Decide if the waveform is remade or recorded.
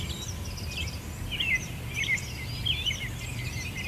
recorded